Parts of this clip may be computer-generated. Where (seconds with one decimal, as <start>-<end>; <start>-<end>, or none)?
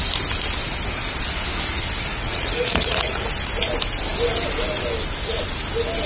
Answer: 2.1-3.3